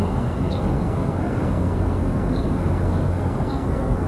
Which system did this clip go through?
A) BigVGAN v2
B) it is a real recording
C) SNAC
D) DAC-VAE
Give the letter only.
C